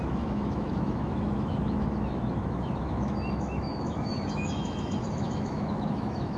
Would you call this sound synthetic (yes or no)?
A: yes